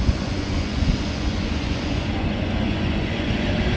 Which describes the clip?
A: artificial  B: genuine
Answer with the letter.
A